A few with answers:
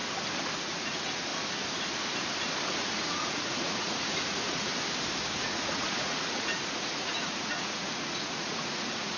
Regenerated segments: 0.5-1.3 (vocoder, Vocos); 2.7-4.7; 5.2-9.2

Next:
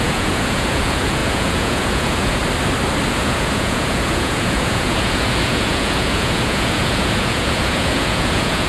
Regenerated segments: 0.0-2.4 (vocoder, Vocos); 3.1-8.7

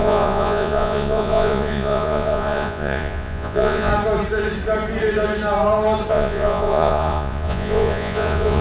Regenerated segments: 0.0-3.9 (vocoder, Vocos); 6.1-8.6